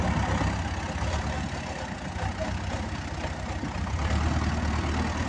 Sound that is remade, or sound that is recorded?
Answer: recorded